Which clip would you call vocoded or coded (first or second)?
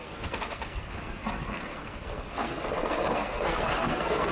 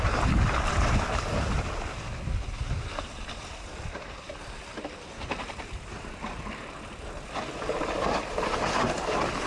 first